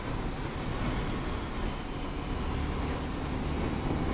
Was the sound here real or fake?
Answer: real